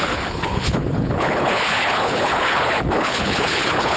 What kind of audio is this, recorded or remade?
remade